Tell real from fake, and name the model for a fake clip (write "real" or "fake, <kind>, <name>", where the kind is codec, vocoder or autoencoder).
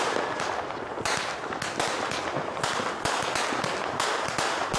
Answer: real